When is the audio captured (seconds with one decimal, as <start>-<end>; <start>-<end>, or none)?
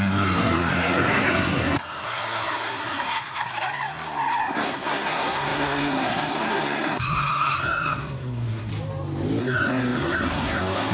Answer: 3.5-4.4; 8.7-9.4